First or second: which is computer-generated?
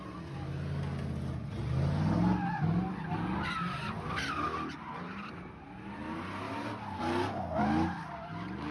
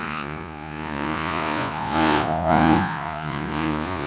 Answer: second